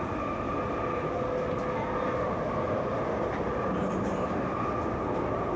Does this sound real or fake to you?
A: real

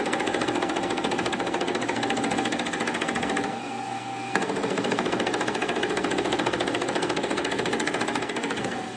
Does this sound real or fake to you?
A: fake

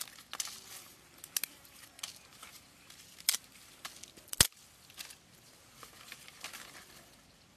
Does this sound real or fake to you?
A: real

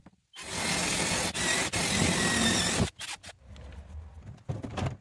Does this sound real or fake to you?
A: real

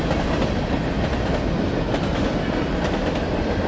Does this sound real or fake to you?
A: real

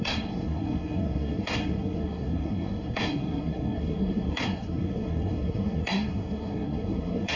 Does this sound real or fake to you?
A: fake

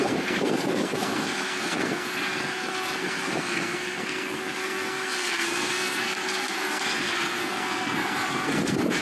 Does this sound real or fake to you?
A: fake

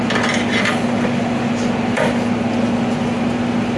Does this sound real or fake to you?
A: real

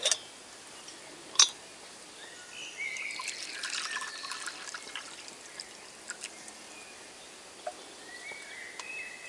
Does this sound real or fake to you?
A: real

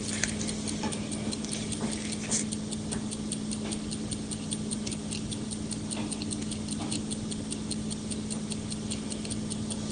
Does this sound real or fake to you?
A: real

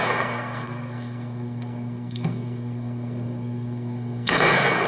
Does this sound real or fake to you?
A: fake